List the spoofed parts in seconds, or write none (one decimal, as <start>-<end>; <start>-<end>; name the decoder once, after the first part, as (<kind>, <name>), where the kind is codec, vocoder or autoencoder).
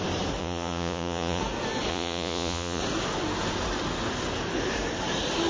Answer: 0.4-1.4 (vocoder, Vocos); 1.9-2.8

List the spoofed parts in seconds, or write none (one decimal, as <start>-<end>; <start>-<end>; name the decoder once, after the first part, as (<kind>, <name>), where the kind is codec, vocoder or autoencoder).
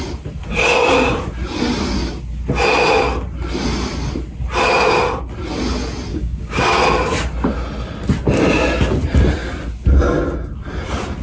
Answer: 6.1-6.8 (codec, DAC)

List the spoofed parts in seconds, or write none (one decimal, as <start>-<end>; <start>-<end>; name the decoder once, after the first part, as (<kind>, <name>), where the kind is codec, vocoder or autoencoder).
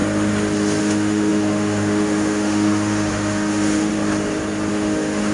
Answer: 0.8-3.9 (autoencoder, DAC-VAE); 4.7-5.3